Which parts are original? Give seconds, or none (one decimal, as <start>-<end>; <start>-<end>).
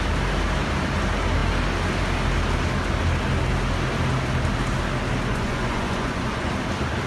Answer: 0.0-5.3; 6.5-7.1